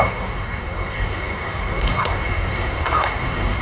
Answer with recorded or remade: remade